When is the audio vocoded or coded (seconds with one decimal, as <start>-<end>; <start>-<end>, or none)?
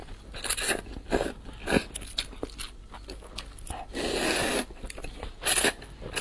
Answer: none